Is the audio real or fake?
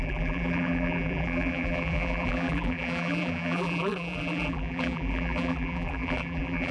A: fake